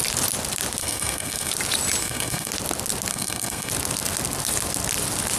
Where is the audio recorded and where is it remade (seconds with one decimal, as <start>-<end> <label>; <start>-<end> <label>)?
0.0-0.8 recorded; 0.8-1.5 remade; 1.5-2.0 recorded; 2.0-2.5 remade; 2.5-3.1 recorded; 3.1-3.7 remade; 3.7-5.4 recorded

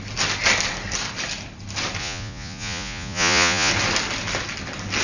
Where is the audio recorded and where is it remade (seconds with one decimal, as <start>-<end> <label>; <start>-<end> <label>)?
0.0-2.0 recorded; 2.0-3.7 remade; 3.7-5.0 recorded

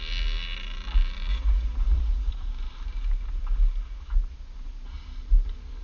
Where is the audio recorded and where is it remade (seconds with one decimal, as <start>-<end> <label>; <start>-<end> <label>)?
0.0-1.3 recorded; 1.3-2.3 remade; 2.3-5.8 recorded

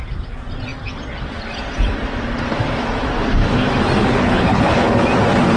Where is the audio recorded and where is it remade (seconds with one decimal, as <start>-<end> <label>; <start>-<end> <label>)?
0.0-4.0 recorded; 4.0-5.0 remade; 5.0-5.6 recorded

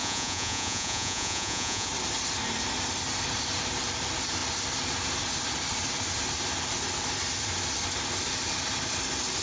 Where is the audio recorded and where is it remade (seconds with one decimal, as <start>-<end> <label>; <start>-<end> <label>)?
0.0-1.9 remade; 1.9-9.4 recorded

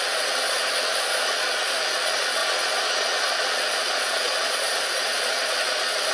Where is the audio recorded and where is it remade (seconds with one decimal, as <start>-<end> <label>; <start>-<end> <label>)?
0.0-6.1 remade